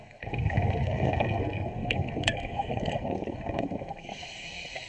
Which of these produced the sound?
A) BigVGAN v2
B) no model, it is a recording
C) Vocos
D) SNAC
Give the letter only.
D